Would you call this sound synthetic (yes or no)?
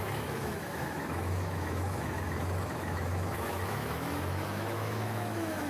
yes